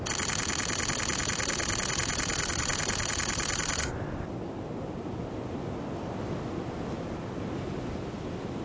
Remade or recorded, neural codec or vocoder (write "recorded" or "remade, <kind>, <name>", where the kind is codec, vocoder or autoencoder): recorded